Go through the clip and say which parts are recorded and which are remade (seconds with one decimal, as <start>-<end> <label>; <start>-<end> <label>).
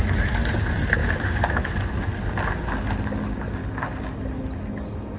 0.0-1.0 recorded; 1.0-1.7 remade; 1.7-5.2 recorded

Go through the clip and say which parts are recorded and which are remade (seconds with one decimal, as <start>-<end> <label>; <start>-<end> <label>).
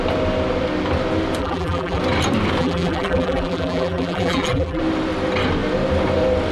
0.0-1.4 recorded; 1.4-2.0 remade; 2.0-2.6 recorded; 2.6-4.8 remade; 4.8-6.5 recorded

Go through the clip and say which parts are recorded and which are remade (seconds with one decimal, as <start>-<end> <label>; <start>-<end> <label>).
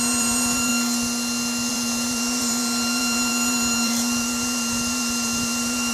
0.0-0.7 remade; 0.7-1.7 recorded; 1.7-5.9 remade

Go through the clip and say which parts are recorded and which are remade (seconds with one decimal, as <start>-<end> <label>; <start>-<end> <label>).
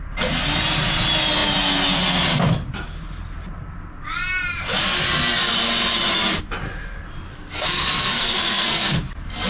0.0-7.3 recorded; 7.3-9.0 remade; 9.0-9.5 recorded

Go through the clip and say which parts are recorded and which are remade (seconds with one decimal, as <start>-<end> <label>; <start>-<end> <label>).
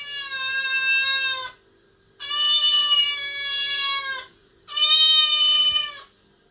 0.0-6.5 recorded